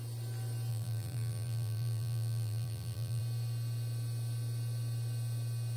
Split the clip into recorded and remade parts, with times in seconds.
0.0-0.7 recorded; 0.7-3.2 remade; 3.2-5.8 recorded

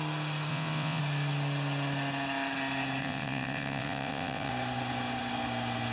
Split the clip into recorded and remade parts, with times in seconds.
0.0-0.5 recorded; 0.5-1.0 remade; 1.0-3.0 recorded; 3.0-4.5 remade; 4.5-5.9 recorded

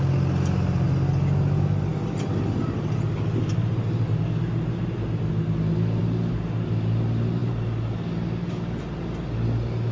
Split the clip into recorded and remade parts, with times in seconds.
0.0-9.9 recorded

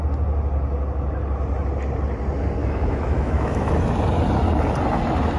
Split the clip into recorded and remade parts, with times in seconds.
0.0-2.6 recorded; 2.6-3.7 remade; 3.7-5.4 recorded